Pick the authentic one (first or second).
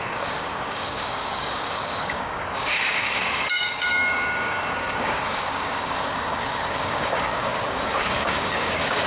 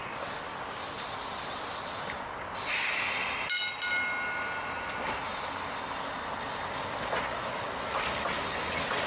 second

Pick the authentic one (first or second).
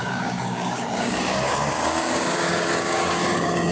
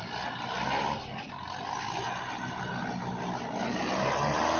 second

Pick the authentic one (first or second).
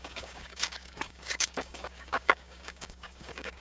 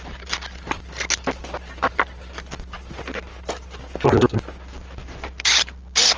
second